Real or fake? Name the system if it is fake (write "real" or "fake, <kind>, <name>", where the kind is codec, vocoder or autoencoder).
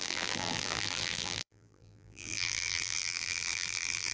fake, vocoder, BigVGAN v2